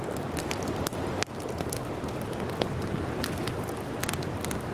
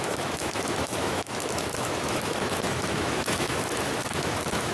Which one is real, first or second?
first